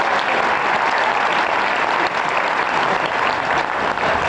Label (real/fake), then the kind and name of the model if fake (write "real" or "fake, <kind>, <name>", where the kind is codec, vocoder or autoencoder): real